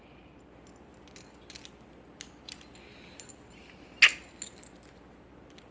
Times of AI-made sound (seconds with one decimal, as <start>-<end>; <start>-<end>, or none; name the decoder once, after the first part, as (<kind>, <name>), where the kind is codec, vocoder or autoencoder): none